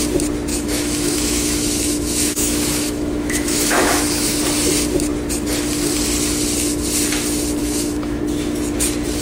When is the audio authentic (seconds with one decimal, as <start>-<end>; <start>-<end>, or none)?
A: 0.0-0.5; 4.4-7.6; 8.2-9.2